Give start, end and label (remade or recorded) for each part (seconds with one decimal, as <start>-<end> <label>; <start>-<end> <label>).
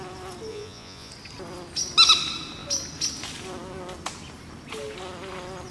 0.0-0.5 recorded; 0.5-1.1 remade; 1.1-5.7 recorded